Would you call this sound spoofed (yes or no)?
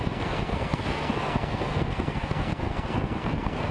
yes